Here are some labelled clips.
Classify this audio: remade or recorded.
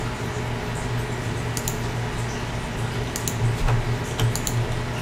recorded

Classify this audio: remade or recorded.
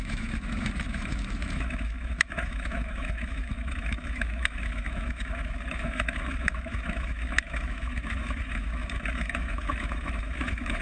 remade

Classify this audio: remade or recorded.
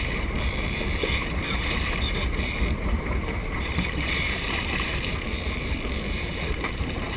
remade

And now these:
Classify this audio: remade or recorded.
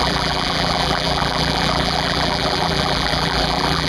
remade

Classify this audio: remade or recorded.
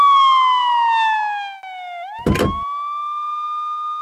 recorded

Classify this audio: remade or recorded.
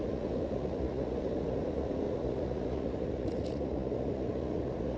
remade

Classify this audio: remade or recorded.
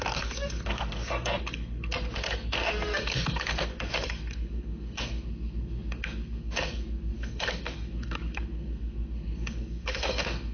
remade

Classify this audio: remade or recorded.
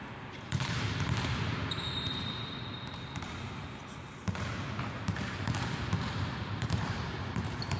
remade